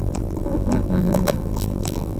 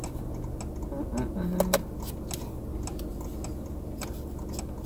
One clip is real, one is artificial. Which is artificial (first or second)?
first